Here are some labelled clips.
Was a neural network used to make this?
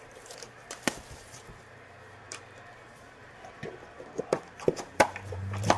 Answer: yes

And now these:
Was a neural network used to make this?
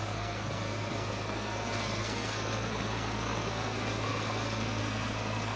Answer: yes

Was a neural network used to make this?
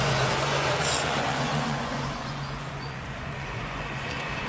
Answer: yes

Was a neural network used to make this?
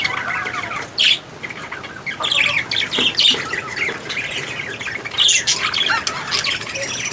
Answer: no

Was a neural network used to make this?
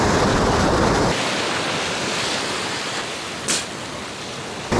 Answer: no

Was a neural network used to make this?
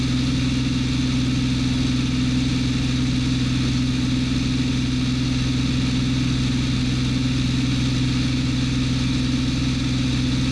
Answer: no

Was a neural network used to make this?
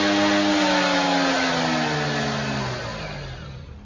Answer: no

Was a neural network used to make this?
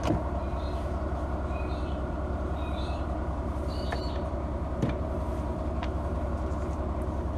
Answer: yes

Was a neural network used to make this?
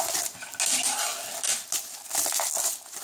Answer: no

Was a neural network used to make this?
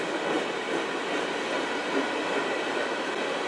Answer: no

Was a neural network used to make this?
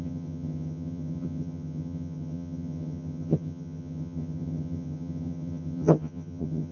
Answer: yes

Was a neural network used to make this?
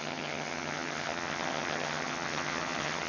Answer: yes